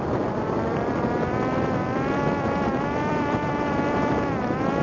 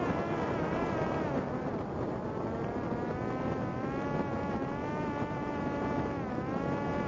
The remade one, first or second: first